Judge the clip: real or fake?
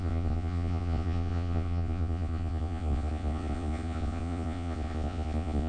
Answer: fake